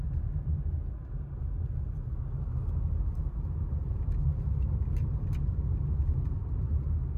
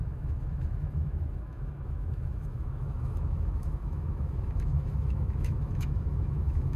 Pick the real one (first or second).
first